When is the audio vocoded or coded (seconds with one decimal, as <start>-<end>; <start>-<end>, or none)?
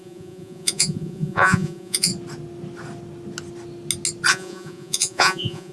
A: 0.0-2.1; 4.3-5.7